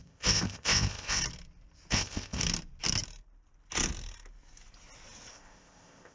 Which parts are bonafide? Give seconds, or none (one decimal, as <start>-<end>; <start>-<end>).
1.2-1.9; 2.4-5.3